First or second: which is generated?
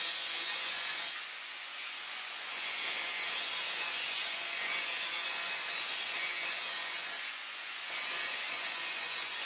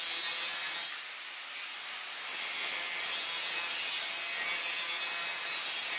first